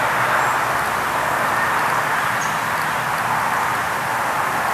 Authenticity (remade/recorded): recorded